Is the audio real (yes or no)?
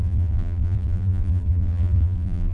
no